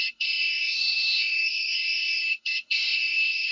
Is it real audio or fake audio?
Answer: fake